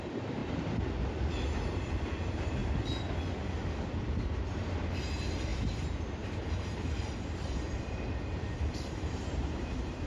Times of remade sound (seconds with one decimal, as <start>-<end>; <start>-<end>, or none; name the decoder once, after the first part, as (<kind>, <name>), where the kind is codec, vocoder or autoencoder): 0.0-0.4 (vocoder, BigVGAN v2); 2.1-2.6; 4.5-10.1